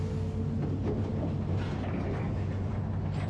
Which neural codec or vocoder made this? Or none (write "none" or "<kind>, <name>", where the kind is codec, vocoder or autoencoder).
none